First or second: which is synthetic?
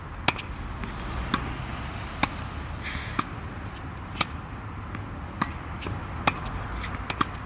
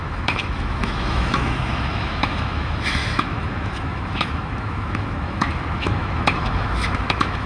second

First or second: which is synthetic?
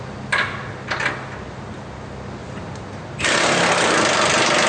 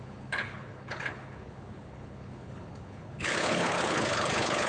second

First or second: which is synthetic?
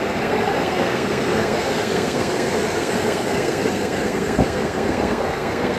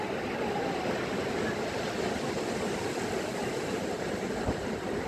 first